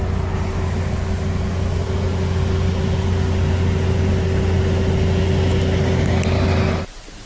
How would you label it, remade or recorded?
recorded